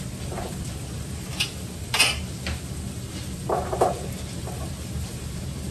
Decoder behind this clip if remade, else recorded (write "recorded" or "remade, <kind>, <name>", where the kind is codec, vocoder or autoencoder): recorded